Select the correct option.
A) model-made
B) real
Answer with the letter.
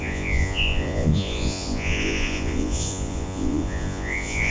A